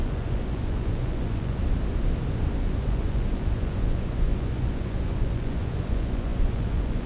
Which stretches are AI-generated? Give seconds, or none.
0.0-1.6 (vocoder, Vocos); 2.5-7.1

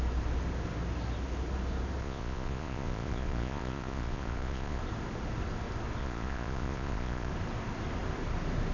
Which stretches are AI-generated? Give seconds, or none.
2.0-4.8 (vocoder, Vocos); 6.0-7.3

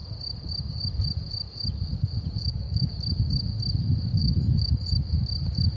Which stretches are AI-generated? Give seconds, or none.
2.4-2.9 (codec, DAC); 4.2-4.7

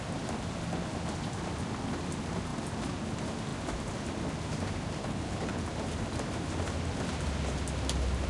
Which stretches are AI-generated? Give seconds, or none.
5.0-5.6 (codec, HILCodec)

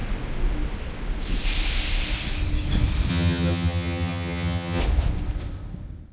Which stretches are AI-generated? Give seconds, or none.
3.1-4.8 (vocoder, HiFi-GAN)